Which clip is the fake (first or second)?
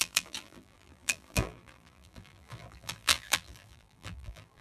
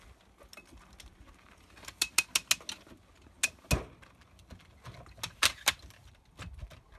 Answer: first